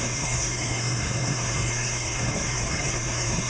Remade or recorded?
remade